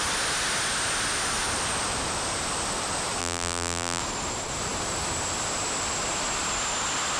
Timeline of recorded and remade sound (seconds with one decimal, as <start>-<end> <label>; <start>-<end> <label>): 0.0-3.2 recorded; 3.2-4.0 remade; 4.0-7.2 recorded